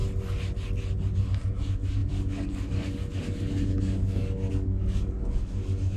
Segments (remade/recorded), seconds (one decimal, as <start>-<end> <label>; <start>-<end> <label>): 0.0-1.6 recorded; 1.6-6.0 remade